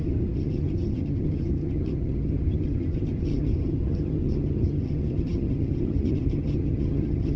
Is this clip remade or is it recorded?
remade